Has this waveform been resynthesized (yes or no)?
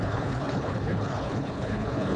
yes